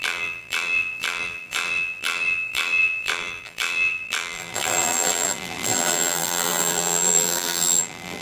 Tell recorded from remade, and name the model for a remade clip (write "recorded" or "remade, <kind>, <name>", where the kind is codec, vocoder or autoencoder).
remade, vocoder, BigVGAN v2